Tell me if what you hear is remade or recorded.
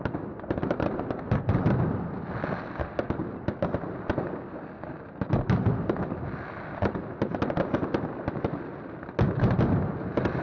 recorded